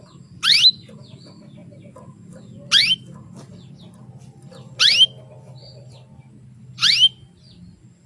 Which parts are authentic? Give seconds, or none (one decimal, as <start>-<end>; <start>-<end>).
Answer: 0.0-8.1